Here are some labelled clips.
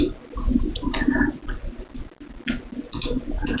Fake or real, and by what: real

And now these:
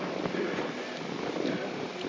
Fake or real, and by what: real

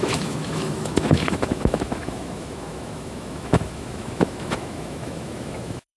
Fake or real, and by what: fake, autoencoder, DAC-VAE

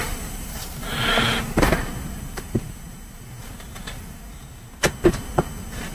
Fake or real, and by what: real